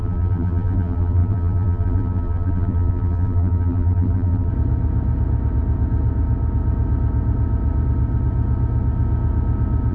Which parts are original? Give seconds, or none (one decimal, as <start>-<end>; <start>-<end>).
4.5-9.9